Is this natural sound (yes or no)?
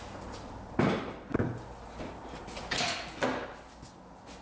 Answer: yes